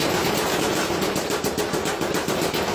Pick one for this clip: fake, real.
real